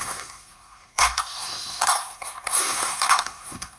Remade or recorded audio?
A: remade